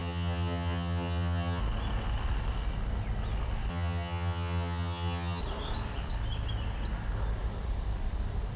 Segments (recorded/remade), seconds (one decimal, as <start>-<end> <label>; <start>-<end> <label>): 0.0-1.6 remade; 1.6-3.7 recorded; 3.7-5.4 remade; 5.4-8.6 recorded

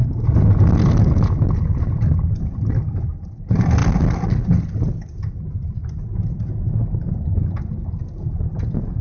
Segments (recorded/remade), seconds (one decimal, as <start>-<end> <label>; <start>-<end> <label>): 0.0-9.0 recorded

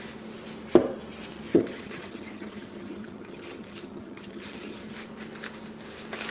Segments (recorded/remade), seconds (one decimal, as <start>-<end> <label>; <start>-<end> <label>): 0.0-1.5 recorded; 1.5-4.9 remade; 4.9-6.3 recorded